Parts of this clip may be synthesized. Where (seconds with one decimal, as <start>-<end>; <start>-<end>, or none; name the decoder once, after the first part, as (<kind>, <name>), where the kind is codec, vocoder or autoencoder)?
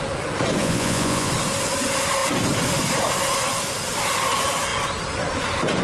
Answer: 0.6-1.3 (vocoder, Vocos)